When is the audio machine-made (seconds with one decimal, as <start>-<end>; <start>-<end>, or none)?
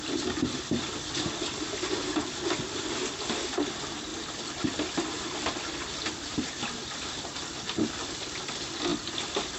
none